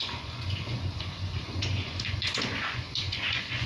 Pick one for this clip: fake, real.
fake